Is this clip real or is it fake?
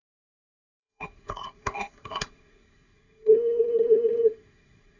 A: fake